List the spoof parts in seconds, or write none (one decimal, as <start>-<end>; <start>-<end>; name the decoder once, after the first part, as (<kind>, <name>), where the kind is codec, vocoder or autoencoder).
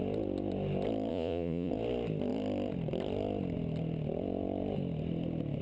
1.1-1.7 (vocoder, Vocos)